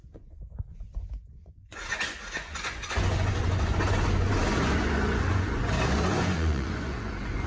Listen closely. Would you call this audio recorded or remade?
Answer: remade